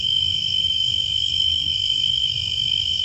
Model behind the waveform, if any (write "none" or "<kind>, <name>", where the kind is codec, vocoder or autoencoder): codec, SNAC